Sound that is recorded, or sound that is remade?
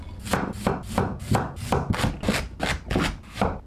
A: recorded